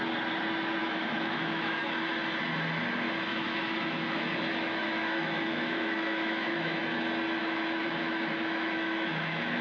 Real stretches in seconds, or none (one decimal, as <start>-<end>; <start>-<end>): 0.0-0.8; 1.8-3.3; 6.8-7.4